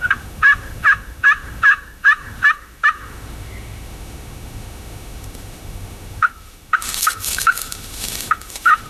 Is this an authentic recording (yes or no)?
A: no